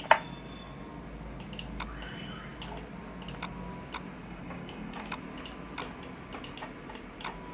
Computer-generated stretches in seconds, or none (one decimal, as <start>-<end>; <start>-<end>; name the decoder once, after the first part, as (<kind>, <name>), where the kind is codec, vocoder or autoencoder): 4.2-5.2 (codec, DAC)